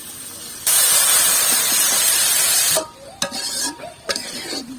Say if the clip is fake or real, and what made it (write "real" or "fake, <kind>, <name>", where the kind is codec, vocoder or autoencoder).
fake, vocoder, BigVGAN v2